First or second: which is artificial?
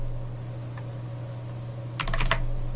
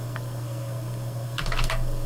second